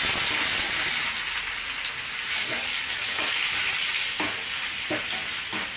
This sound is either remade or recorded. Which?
recorded